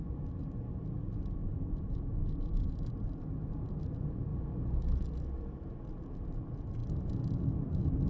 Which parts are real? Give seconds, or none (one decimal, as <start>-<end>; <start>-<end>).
0.0-1.4; 2.7-8.1